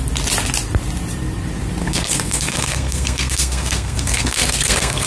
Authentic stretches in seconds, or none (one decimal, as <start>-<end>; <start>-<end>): 0.0-1.8